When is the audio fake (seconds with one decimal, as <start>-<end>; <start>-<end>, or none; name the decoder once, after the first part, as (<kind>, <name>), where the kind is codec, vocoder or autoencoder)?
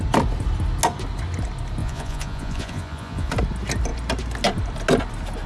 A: 1.8-3.3 (vocoder, Vocos)